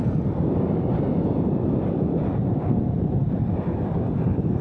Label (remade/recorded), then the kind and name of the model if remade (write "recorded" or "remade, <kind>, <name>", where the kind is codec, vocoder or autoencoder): recorded